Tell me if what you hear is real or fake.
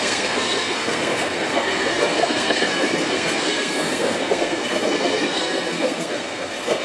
fake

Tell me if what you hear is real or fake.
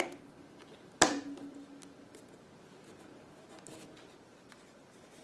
real